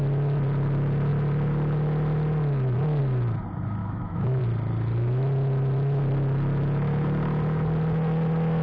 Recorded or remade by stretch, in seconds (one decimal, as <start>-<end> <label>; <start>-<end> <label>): 0.0-3.8 recorded; 3.8-4.4 remade; 4.4-8.6 recorded